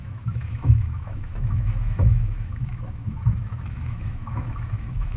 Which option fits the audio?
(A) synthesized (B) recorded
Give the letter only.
A